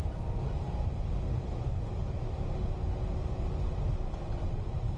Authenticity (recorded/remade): recorded